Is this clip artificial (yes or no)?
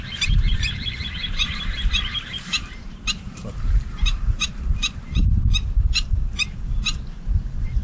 yes